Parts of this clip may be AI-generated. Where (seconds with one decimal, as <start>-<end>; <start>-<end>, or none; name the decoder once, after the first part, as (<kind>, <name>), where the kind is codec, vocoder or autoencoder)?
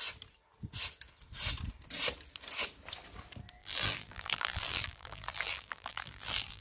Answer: 3.6-6.6 (vocoder, BigVGAN v2)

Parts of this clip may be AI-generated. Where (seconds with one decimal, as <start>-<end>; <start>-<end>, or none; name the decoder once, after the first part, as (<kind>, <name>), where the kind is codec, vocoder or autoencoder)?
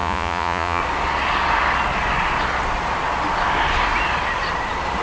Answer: 0.0-0.8 (vocoder, Vocos)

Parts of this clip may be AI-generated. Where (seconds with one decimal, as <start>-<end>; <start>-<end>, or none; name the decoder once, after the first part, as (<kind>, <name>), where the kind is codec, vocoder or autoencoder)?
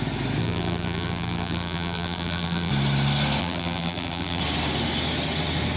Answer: 0.4-2.7 (vocoder, BigVGAN v2); 3.4-4.4